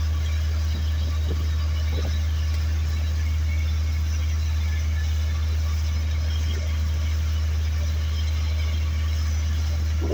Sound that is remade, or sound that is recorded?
recorded